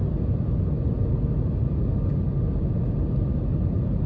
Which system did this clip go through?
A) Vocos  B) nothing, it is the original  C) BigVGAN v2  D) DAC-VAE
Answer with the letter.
B